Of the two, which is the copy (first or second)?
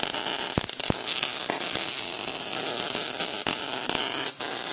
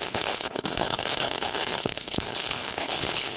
second